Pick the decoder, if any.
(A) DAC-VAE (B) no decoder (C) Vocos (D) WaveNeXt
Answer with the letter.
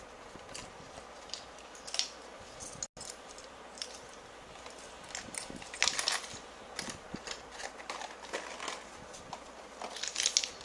B